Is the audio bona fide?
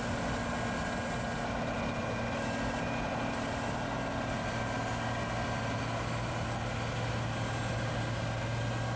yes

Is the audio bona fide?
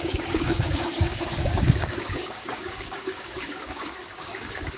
no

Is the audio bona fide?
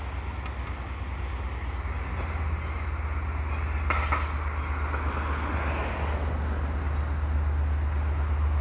yes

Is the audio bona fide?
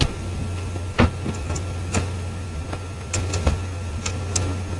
yes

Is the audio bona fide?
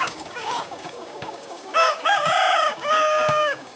no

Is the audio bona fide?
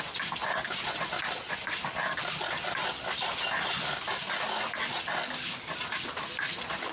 yes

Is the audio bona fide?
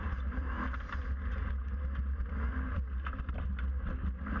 yes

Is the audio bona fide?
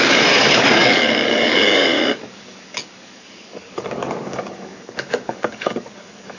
no